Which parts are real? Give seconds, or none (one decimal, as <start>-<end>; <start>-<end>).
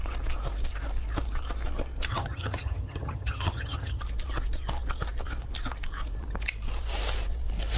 0.0-2.1; 4.0-7.8